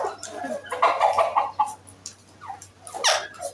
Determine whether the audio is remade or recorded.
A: recorded